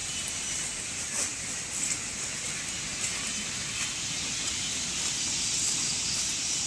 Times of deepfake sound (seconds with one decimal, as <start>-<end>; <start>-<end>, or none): none